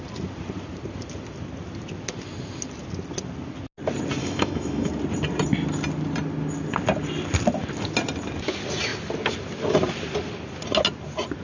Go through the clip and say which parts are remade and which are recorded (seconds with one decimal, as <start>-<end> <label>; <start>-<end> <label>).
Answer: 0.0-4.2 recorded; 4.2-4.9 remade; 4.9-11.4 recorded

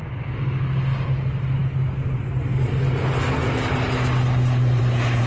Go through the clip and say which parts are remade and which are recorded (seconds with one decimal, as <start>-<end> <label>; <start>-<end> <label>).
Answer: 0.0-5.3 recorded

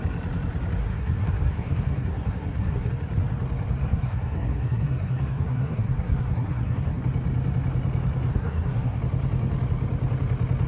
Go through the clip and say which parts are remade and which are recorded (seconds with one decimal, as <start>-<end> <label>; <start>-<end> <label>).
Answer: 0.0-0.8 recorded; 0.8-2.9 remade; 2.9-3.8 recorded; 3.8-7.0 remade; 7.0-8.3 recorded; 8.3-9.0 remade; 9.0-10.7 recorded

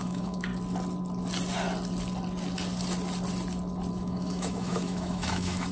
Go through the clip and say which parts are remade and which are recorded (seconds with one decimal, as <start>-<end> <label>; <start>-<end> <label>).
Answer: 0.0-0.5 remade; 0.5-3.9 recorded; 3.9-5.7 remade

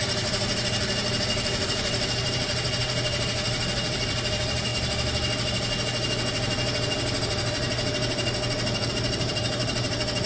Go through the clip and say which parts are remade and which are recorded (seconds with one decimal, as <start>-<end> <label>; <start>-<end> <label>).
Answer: 0.0-4.7 remade; 4.7-8.9 recorded; 8.9-10.3 remade

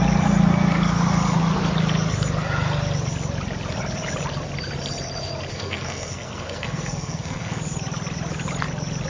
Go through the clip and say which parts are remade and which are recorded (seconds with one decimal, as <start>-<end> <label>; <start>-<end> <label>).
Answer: 0.0-5.5 recorded; 5.5-7.6 remade; 7.6-9.1 recorded

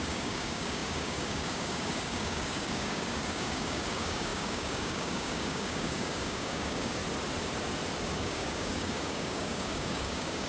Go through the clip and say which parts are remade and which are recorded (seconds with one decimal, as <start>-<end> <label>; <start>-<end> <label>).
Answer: 0.0-7.0 remade; 7.0-8.0 recorded; 8.0-10.5 remade

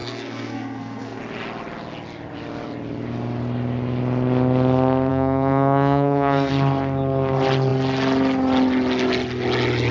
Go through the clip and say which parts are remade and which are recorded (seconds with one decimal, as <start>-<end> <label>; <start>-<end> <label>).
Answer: 0.0-1.2 remade; 1.2-5.1 recorded; 5.1-6.5 remade; 6.5-9.9 recorded